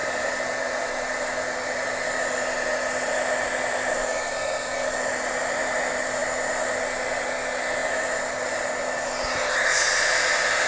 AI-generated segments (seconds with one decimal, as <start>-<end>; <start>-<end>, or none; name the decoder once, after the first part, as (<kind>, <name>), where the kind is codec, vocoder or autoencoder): none